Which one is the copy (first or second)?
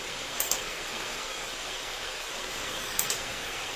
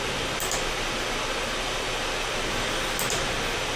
first